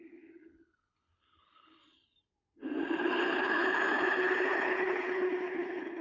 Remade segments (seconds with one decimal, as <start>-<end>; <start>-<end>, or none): 0.0-1.8; 3.0-6.0